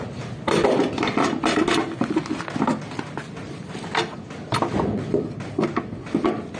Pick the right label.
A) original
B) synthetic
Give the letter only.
A